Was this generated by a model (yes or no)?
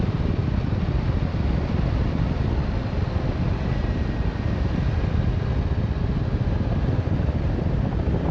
no